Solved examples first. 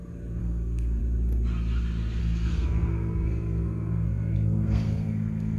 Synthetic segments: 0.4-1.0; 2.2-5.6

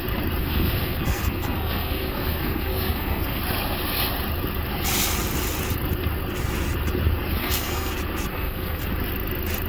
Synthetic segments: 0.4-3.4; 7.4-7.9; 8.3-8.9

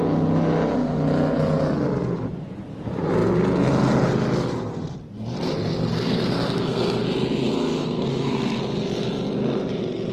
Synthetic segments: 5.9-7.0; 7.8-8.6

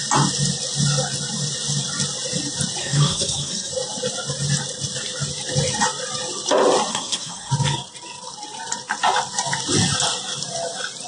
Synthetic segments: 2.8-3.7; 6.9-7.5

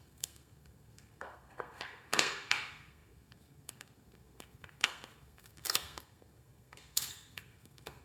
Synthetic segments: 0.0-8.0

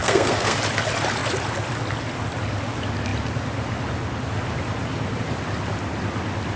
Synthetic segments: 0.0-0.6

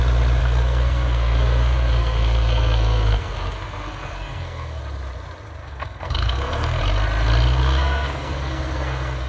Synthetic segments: 0.4-4.8; 5.6-6.8; 7.6-9.3